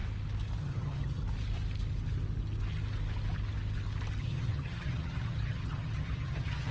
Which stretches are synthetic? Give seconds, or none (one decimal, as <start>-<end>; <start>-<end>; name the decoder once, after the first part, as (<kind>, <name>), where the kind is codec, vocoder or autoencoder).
0.6-1.2 (vocoder, HiFi-GAN); 4.2-6.7